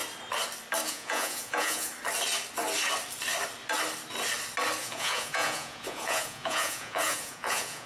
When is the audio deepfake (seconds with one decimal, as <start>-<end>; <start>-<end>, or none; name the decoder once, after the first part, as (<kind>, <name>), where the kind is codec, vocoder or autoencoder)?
0.9-1.9 (vocoder, Vocos); 4.8-7.9